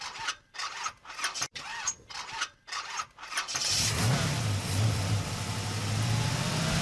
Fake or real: fake